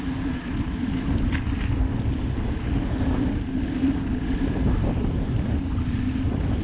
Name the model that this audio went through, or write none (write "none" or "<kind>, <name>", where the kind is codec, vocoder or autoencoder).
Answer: vocoder, BigVGAN v2